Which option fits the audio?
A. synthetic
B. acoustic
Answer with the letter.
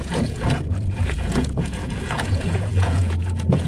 A